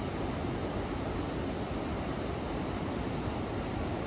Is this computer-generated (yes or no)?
no